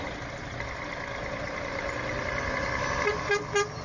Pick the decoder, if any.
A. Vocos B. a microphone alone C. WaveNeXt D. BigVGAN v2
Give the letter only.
B